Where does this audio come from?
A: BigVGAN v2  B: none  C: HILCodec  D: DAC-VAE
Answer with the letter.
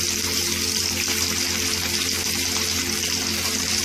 B